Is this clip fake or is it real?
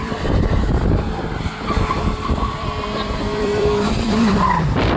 fake